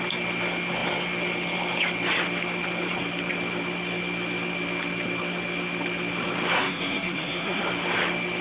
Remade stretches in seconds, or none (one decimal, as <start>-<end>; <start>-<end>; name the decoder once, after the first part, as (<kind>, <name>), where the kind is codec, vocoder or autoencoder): 6.5-7.6 (codec, SNAC)